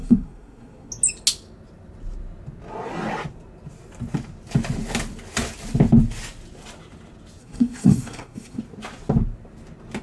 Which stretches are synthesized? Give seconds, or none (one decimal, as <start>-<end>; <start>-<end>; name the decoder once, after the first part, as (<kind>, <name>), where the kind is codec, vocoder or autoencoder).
0.0-0.9 (codec, SNAC); 7.4-8.6